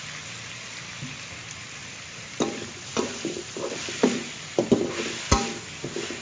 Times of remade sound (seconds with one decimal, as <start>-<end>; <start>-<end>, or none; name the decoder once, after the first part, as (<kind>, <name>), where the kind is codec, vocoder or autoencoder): 1.8-4.9 (vocoder, BigVGAN v2)